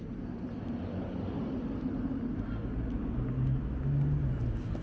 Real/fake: real